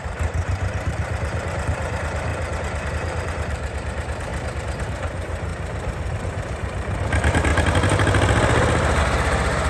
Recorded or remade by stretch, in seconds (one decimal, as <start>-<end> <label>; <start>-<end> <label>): 0.0-2.3 remade; 2.3-2.9 recorded; 2.9-4.3 remade; 4.3-5.0 recorded; 5.0-5.5 remade; 5.5-6.3 recorded; 6.3-7.5 remade; 7.5-9.0 recorded; 9.0-9.7 remade